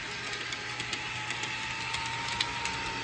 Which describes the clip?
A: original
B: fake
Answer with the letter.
A